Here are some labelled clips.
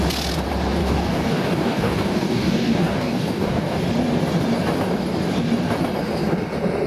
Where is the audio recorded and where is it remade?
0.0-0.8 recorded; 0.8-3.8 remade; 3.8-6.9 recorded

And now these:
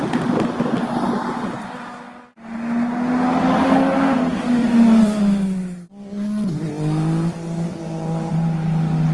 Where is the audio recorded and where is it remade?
0.0-4.6 recorded; 4.6-5.2 remade; 5.2-9.1 recorded

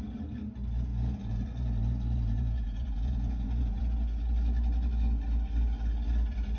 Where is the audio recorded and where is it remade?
0.0-0.9 recorded; 0.9-3.8 remade; 3.8-6.6 recorded